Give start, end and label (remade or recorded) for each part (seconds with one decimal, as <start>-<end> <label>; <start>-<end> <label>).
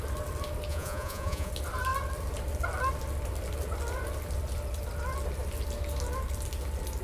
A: 0.0-0.7 recorded; 0.7-1.5 remade; 1.5-7.0 recorded